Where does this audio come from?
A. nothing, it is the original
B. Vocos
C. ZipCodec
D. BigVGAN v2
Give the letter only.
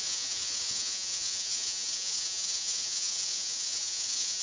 B